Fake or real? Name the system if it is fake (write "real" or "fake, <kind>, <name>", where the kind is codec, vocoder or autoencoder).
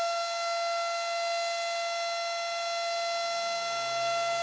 real